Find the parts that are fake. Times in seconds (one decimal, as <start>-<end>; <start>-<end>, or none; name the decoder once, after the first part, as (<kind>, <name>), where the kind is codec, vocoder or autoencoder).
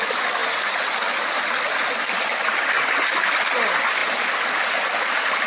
none